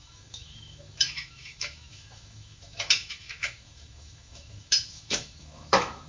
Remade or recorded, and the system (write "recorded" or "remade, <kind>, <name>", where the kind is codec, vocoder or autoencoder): remade, autoencoder, DAC-VAE